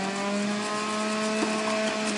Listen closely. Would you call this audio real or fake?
real